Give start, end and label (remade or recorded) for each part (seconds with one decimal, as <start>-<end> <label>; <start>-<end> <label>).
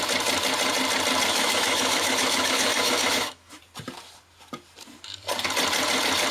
0.0-1.3 recorded; 1.3-3.6 remade; 3.6-6.3 recorded